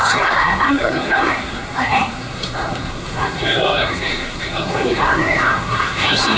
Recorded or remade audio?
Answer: remade